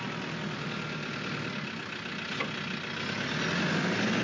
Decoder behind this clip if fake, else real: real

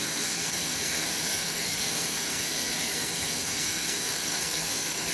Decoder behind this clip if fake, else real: fake, codec, SNAC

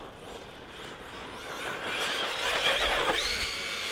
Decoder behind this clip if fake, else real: real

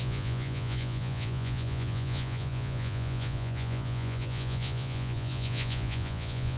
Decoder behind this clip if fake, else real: fake, vocoder, Vocos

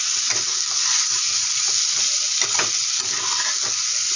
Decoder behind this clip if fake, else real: real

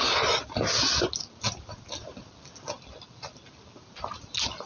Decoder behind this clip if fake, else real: real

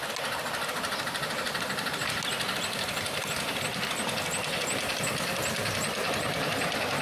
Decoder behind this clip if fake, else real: real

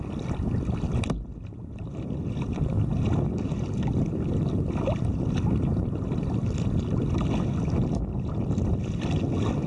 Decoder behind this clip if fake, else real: real